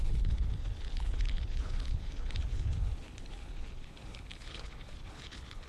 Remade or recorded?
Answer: remade